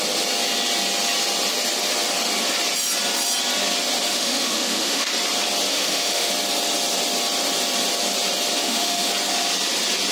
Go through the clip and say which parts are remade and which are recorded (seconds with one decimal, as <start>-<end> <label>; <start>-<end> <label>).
0.0-4.1 recorded; 4.1-5.1 remade; 5.1-5.7 recorded; 5.7-6.3 remade; 6.3-8.6 recorded; 8.6-9.1 remade; 9.1-10.1 recorded